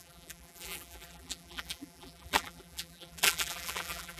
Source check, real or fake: fake